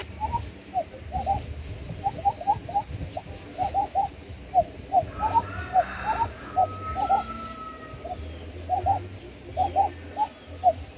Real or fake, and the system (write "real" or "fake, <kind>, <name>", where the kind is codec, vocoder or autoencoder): real